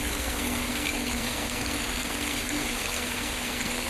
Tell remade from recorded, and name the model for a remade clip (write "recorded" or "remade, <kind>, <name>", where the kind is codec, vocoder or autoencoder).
remade, codec, SNAC